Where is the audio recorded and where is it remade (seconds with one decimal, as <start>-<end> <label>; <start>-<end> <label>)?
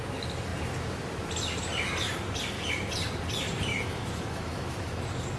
0.0-3.7 recorded; 3.7-5.0 remade; 5.0-5.4 recorded